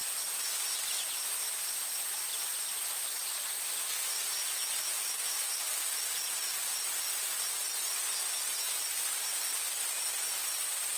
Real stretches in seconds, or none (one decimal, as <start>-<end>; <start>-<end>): 0.0-2.3; 4.0-11.0